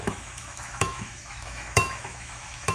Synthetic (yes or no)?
yes